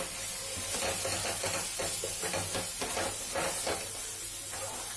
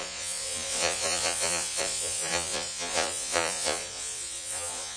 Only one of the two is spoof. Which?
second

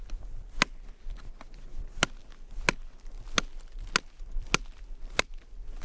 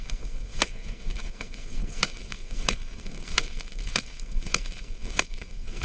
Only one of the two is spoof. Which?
second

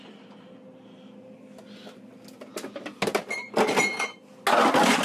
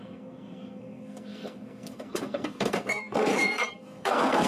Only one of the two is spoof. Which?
second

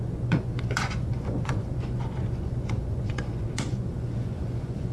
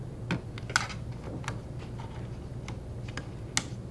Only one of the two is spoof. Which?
first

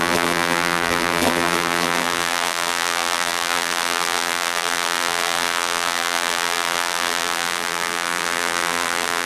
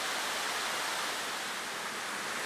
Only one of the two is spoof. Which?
first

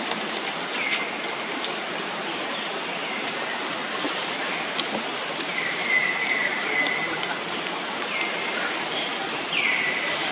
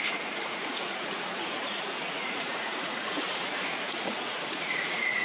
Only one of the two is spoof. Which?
second